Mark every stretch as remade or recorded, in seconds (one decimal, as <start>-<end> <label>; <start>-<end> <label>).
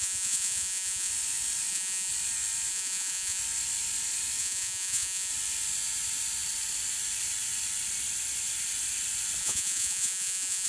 0.0-1.1 remade; 1.1-1.7 recorded; 1.7-2.1 remade; 2.1-2.7 recorded; 2.7-3.4 remade; 3.4-4.4 recorded; 4.4-5.3 remade; 5.3-9.4 recorded; 9.4-10.7 remade